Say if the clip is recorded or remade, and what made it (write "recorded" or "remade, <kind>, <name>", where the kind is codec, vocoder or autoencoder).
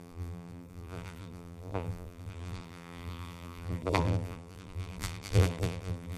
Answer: remade, vocoder, BigVGAN v2